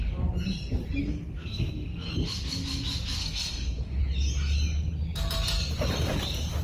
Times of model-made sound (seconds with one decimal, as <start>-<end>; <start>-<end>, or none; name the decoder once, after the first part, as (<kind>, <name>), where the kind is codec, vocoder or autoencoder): 1.0-2.1 (codec, SNAC); 3.2-4.0